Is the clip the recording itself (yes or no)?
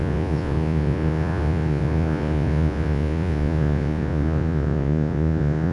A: no